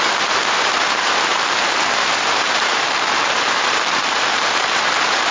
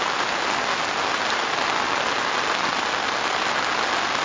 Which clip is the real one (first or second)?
second